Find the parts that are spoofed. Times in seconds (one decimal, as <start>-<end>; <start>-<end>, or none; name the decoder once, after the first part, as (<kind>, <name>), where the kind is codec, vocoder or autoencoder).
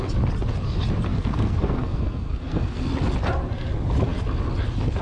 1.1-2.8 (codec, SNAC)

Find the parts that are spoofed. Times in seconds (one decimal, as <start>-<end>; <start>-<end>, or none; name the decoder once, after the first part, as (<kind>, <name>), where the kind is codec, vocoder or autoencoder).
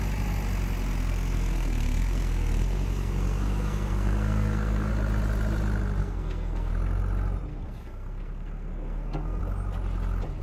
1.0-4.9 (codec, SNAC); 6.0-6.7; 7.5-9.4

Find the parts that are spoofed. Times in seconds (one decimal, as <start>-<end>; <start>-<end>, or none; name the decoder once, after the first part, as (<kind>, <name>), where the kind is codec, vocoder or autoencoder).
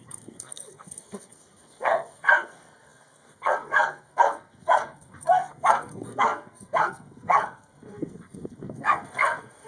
0.0-9.7 (codec, SNAC)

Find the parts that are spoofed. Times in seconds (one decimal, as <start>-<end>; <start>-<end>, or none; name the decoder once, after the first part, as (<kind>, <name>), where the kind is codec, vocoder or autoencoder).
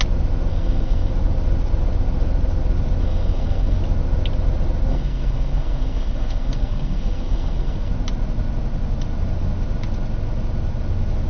0.5-1.1 (codec, SNAC); 3.0-3.8; 4.9-7.9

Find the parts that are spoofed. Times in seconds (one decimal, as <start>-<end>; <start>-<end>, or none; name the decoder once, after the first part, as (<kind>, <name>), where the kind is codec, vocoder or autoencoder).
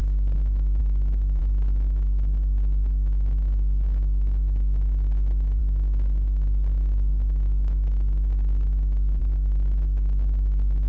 none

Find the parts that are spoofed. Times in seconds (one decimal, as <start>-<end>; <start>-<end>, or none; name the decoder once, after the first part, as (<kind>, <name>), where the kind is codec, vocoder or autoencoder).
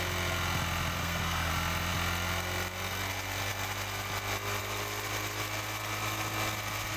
1.0-1.5 (codec, SNAC)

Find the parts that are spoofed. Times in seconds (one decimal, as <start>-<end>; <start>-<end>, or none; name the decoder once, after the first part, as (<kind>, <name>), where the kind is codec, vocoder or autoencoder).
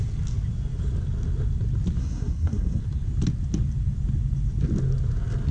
2.0-2.8 (codec, SNAC)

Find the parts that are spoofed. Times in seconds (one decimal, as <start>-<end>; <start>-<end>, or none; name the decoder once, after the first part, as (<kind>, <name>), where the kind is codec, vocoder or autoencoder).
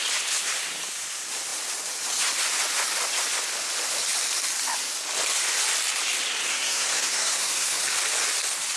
6.5-7.8 (codec, SNAC)